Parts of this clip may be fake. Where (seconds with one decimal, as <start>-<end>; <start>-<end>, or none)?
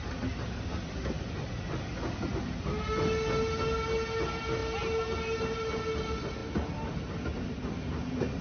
none